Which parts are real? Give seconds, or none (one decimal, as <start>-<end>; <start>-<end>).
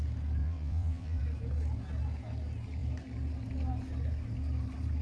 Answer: 0.0-0.4; 1.2-5.0